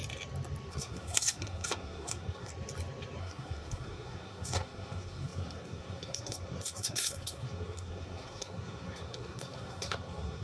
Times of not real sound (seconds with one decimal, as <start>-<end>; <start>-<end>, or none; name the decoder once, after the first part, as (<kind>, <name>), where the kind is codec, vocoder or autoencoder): 0.7-2.5 (codec, SNAC); 3.2-10.4